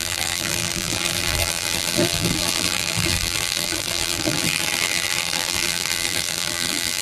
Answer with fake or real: fake